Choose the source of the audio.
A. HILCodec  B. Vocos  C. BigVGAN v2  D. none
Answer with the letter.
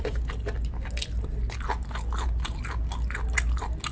D